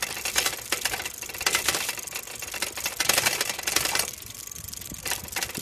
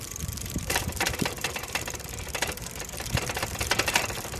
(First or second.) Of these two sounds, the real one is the first